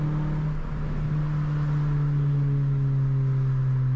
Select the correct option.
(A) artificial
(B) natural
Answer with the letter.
B